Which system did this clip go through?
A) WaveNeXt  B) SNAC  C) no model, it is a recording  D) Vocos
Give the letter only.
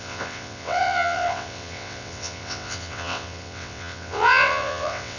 A